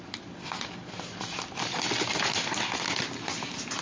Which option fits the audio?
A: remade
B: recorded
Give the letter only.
B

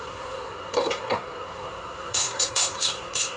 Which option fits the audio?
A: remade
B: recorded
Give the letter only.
A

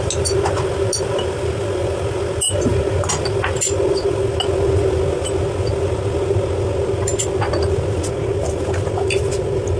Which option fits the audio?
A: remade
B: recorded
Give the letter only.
B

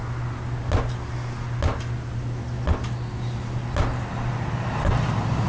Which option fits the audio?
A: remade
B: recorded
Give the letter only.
B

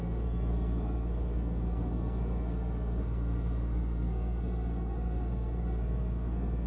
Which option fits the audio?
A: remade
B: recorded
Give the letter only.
A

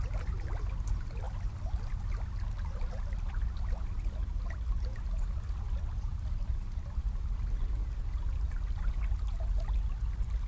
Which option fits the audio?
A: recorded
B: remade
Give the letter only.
A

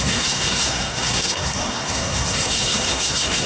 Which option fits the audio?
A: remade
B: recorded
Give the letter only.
A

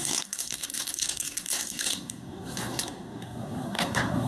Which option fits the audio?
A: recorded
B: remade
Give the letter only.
B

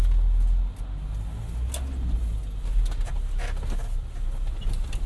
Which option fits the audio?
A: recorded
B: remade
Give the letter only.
A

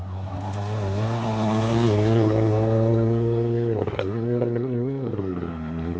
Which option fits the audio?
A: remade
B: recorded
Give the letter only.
A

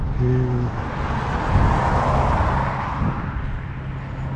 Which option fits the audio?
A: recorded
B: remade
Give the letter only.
A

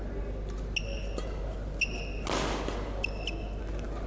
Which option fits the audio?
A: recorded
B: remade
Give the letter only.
A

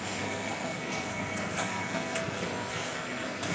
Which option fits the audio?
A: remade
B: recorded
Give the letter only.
A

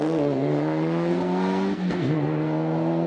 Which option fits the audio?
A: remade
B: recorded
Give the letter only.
A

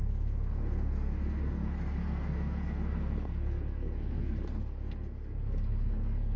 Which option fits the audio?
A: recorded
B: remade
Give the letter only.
B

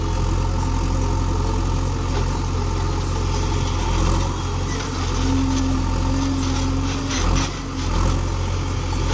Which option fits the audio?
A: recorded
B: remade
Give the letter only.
A